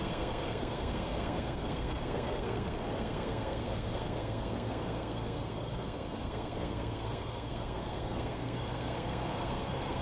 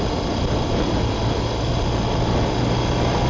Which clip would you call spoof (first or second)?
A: first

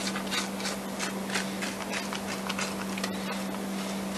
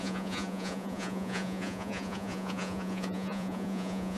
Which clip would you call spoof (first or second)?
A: second